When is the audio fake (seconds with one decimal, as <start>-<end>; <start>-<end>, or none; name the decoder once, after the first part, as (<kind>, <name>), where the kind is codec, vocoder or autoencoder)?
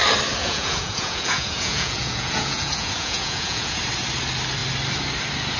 0.4-3.8 (vocoder, Vocos)